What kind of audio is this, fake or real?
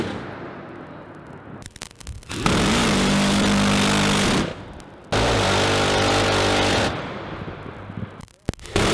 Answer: real